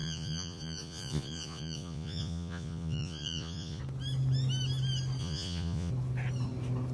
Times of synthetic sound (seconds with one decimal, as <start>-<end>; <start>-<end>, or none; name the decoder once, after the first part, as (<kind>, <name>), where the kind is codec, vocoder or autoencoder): 0.0-3.8 (vocoder, Vocos); 5.2-5.9